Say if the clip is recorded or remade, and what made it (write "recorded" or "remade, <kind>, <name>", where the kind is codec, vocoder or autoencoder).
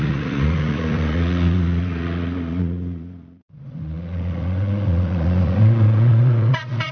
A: remade, vocoder, Vocos